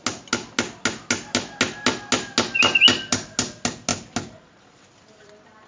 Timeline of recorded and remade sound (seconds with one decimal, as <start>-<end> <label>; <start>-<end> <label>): 0.0-5.7 recorded